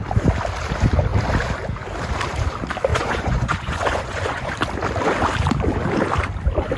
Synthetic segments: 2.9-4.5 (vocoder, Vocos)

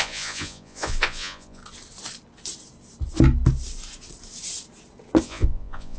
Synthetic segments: 0.0-1.6 (vocoder, Vocos); 5.2-6.0

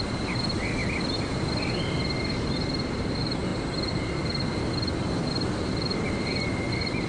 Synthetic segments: none

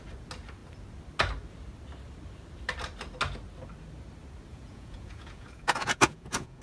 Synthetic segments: 4.5-6.6 (vocoder, Vocos)